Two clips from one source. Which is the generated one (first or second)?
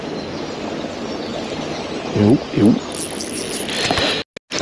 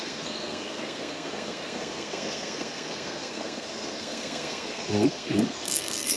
second